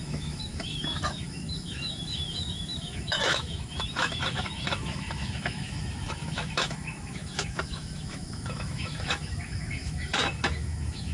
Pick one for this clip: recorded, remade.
remade